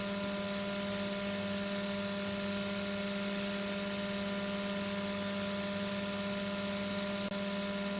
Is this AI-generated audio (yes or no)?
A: no